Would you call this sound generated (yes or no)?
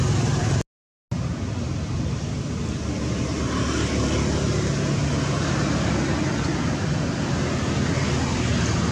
no